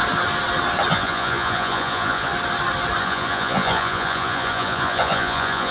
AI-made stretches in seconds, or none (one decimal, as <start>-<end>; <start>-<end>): 0.9-2.3; 3.0-5.7